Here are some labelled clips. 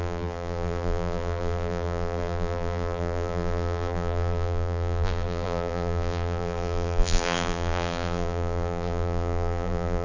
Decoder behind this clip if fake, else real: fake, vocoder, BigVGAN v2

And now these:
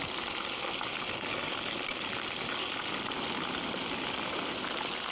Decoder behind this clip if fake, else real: real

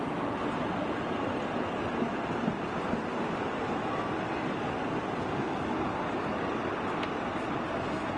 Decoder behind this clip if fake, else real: real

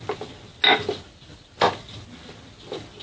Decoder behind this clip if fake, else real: real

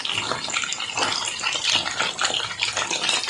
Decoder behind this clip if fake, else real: real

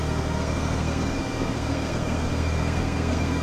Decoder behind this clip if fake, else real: fake, codec, SNAC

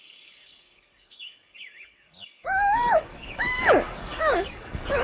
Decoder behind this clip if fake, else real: fake, codec, DAC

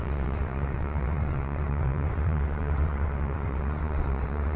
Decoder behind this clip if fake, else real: fake, vocoder, WaveNeXt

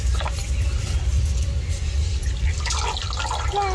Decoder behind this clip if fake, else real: real